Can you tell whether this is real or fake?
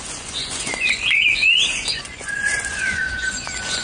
fake